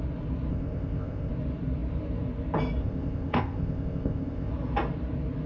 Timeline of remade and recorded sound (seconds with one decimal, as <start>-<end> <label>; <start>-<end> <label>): 0.0-0.5 recorded; 0.5-1.3 remade; 1.3-2.8 recorded; 2.8-4.5 remade; 4.5-5.5 recorded